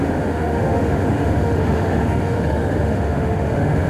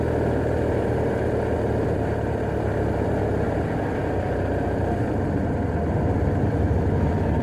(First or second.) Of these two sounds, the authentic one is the second